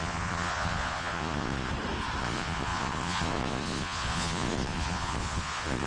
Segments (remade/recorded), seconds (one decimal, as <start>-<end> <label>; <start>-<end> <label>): 0.0-1.7 remade; 1.7-2.2 recorded; 2.2-5.9 remade